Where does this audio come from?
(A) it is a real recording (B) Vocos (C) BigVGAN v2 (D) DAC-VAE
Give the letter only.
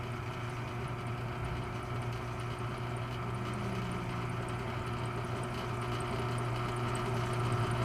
A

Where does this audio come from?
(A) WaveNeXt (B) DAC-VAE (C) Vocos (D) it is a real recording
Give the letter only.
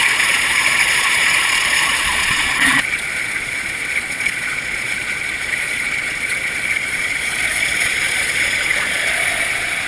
C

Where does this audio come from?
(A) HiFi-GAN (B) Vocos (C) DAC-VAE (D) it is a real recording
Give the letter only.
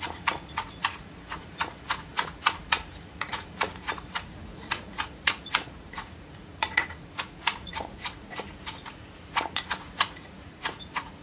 B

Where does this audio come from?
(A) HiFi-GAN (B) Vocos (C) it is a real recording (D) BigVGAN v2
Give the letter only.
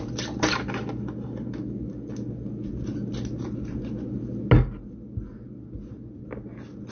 C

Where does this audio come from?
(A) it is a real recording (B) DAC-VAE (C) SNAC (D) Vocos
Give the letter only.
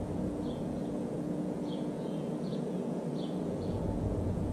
D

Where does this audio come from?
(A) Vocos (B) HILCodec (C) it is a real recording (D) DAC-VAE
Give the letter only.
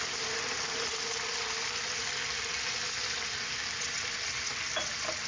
C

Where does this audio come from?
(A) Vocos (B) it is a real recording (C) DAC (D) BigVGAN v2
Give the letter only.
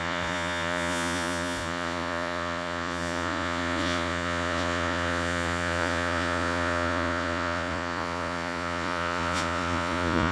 A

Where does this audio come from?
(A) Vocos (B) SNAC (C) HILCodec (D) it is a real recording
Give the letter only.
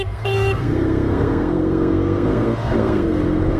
B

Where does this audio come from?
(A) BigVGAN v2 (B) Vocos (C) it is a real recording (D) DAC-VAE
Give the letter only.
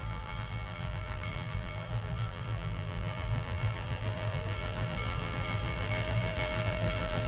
A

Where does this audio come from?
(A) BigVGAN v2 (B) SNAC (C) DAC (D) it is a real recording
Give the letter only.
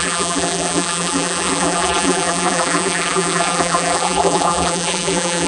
A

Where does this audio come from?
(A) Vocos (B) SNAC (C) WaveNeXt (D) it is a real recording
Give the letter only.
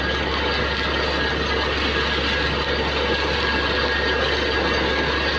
D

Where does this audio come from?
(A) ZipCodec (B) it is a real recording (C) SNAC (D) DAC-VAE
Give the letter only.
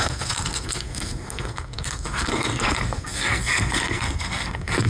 C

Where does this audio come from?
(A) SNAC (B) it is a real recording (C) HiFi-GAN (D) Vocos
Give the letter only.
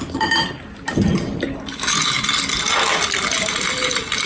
B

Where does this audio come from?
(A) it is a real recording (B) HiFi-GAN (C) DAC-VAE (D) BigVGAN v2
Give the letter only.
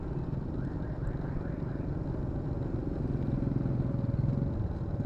A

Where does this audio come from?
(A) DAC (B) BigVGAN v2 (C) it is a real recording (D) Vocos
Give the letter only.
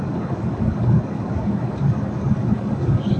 A